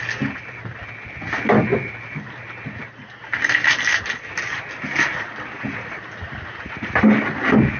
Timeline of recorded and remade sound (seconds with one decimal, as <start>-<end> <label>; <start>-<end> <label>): 0.0-7.8 recorded